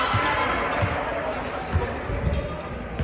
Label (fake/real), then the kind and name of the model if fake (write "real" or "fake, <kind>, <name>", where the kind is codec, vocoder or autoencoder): real